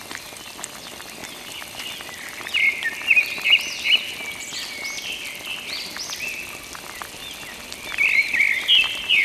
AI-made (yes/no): no